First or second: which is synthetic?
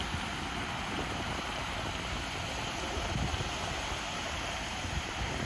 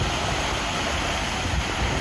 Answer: first